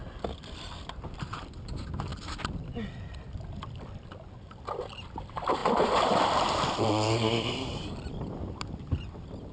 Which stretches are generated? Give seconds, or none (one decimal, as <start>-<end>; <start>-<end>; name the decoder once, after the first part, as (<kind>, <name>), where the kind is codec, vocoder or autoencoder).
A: 0.0-9.5 (vocoder, BigVGAN v2)